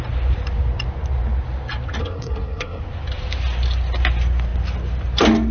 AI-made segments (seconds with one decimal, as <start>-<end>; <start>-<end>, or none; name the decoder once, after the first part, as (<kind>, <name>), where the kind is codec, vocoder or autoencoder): 2.0-2.8 (codec, SNAC)